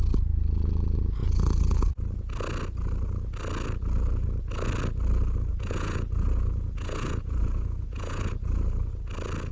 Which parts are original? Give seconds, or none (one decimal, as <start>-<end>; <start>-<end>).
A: 0.0-1.2; 1.9-5.5; 8.9-9.5